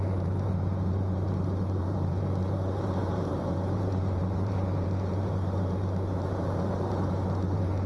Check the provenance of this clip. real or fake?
fake